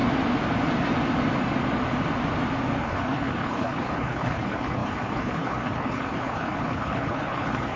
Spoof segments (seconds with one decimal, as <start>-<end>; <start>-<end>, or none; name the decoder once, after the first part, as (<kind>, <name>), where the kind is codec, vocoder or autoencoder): 2.8-7.8 (codec, HILCodec)